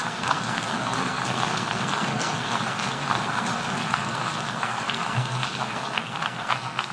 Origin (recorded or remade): remade